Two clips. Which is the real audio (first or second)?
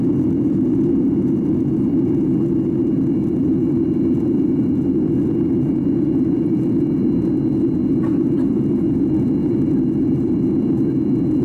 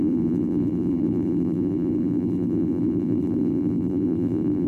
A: first